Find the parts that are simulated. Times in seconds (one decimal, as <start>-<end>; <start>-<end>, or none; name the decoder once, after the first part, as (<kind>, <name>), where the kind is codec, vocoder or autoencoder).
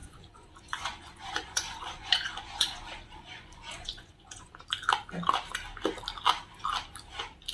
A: 0.0-4.5 (vocoder, Vocos)